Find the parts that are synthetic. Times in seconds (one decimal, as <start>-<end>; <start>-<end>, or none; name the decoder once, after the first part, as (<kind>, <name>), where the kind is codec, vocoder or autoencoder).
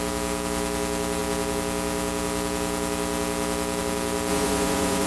4.3-5.1 (vocoder, Vocos)